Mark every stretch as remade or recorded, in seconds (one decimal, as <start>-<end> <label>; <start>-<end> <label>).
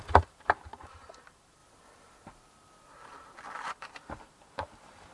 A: 0.0-1.6 remade; 1.6-3.7 recorded; 3.7-5.1 remade